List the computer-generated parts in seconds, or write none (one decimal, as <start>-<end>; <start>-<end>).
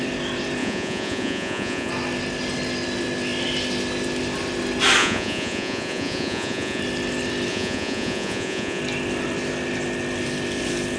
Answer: 0.6-1.9; 5.0-6.8; 7.5-8.8